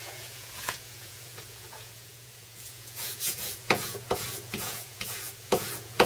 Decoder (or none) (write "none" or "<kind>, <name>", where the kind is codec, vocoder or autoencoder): vocoder, Vocos